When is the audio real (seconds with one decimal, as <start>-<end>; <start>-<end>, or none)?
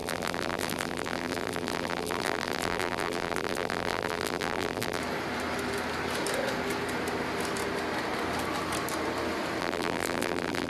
5.0-9.6